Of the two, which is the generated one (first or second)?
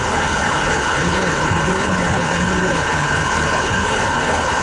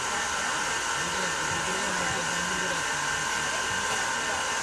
first